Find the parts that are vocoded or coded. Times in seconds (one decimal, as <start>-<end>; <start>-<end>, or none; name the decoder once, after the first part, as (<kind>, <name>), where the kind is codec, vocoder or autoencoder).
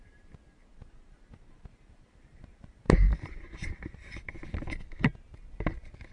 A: 0.7-4.4 (vocoder, BigVGAN v2)